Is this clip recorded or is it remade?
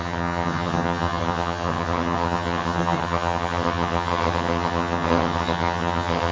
remade